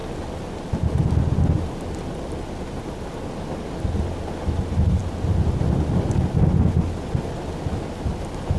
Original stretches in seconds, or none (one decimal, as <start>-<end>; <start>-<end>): 0.0-8.6